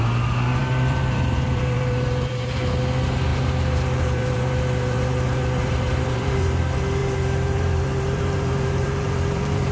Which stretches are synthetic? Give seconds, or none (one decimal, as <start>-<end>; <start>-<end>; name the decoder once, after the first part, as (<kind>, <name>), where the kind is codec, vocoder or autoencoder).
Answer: 0.6-2.6 (vocoder, BigVGAN v2); 3.3-6.6; 7.0-9.7